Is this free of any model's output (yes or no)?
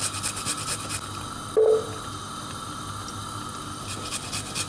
yes